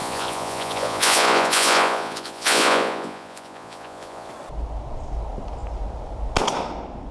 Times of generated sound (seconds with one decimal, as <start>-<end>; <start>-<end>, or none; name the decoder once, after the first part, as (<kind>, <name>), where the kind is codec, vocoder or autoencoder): 0.0-4.3 (vocoder, Vocos)